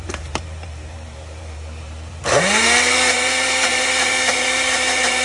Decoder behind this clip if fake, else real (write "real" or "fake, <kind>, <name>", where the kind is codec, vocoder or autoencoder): fake, vocoder, BigVGAN v2